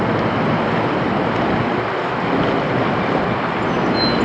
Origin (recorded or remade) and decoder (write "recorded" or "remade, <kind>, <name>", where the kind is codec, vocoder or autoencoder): recorded